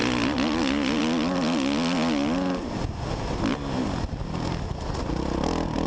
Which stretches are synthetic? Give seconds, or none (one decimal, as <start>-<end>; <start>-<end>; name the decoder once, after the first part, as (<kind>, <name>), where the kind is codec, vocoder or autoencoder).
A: none